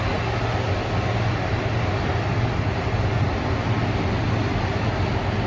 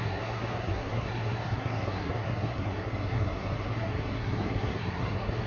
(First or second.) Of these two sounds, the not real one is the second